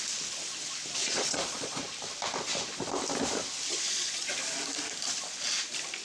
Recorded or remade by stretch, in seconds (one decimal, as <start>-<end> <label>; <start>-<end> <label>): 0.0-1.0 recorded; 1.0-1.8 remade; 1.8-3.7 recorded; 3.7-4.3 remade; 4.3-6.0 recorded